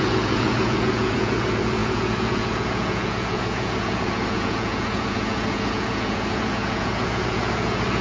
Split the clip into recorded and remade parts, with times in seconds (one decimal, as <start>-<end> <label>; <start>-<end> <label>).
0.0-8.0 remade